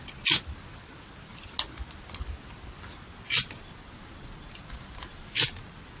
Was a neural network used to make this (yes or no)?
no